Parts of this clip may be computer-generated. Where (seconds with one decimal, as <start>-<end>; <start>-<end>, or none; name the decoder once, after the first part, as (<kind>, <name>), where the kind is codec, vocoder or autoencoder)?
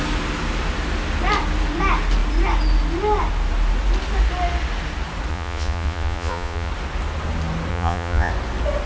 5.3-6.7 (vocoder, Vocos); 7.7-8.3